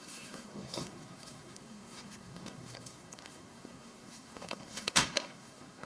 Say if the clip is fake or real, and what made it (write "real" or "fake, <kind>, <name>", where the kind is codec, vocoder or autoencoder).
fake, codec, SNAC